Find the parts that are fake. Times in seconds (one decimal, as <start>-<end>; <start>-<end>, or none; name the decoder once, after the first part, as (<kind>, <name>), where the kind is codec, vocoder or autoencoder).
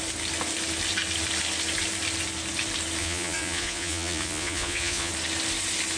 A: 3.0-5.1 (vocoder, Vocos)